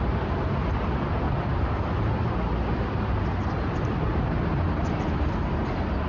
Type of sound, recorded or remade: recorded